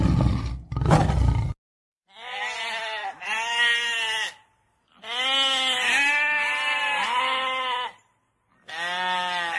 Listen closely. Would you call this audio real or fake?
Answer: real